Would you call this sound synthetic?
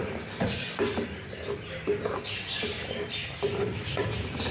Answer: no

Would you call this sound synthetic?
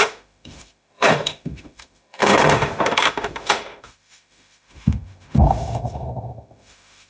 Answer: yes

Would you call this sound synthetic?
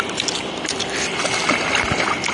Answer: no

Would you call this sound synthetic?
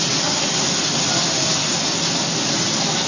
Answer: no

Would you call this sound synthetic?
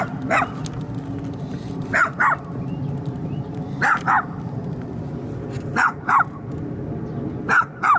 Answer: no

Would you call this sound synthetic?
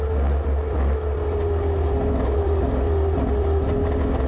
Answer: no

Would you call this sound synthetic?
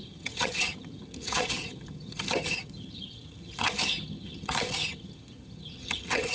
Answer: yes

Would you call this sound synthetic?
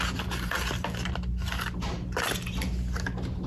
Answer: no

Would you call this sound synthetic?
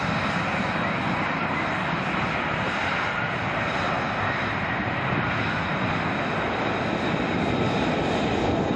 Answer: no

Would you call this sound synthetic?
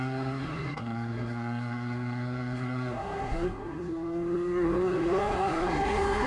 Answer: yes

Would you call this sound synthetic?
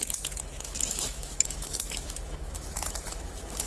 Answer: yes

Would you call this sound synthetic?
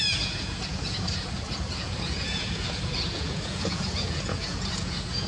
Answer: yes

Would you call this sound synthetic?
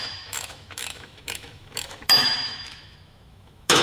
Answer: yes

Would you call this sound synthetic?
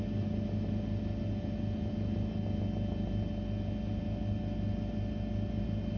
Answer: no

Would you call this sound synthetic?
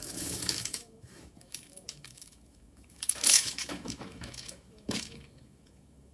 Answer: yes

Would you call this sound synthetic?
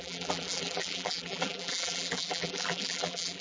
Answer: yes